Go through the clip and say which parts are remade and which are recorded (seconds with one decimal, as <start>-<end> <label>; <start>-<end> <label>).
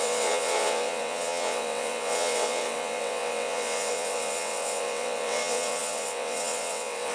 0.0-7.1 remade